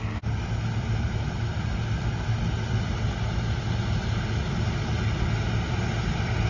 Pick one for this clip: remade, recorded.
recorded